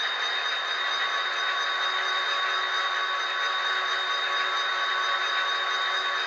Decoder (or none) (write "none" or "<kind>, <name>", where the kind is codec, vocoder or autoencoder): none